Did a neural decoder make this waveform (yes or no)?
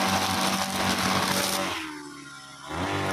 no